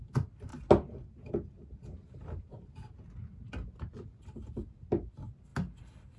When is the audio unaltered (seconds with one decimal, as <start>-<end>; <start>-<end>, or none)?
0.0-6.2